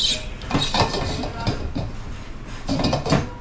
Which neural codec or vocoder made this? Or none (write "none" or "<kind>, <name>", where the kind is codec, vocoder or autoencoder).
none